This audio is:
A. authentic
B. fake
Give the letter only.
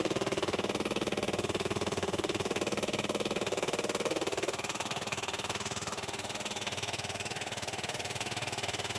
B